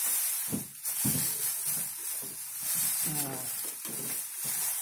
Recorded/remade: recorded